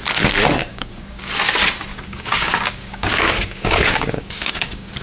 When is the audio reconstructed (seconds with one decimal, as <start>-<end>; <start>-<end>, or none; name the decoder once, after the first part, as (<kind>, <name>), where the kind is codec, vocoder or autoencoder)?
0.6-1.3 (codec, DAC); 1.9-5.0